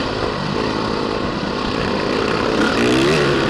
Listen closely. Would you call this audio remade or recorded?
recorded